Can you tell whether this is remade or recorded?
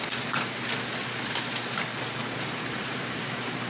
recorded